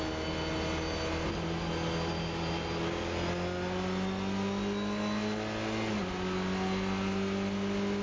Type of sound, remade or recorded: recorded